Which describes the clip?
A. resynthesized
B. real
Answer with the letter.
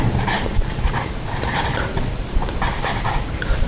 A